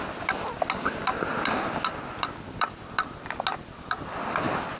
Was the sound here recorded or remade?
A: recorded